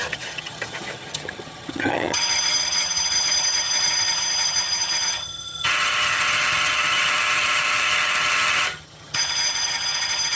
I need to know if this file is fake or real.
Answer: fake